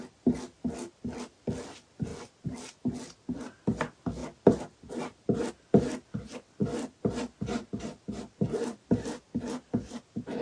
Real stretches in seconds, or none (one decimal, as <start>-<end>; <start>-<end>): 0.0-10.4